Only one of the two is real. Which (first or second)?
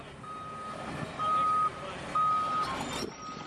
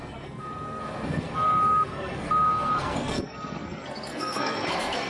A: first